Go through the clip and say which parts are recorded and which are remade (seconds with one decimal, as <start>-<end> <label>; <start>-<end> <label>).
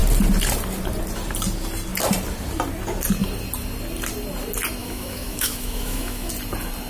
0.0-4.8 recorded; 4.8-6.3 remade; 6.3-6.9 recorded